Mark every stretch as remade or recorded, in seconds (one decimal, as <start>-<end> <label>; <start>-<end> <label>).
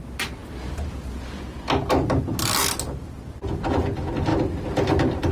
0.0-5.3 recorded